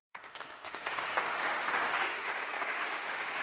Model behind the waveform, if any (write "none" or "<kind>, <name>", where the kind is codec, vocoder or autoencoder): autoencoder, DAC-VAE